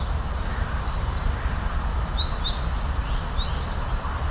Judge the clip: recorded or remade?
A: recorded